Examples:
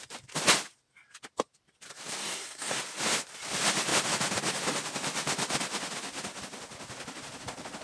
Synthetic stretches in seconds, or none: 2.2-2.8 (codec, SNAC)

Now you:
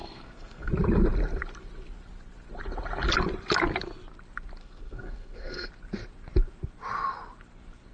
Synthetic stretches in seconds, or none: 0.0-0.7 (codec, SNAC); 4.6-5.7